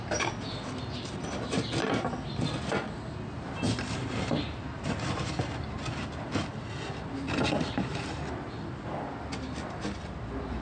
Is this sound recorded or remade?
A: recorded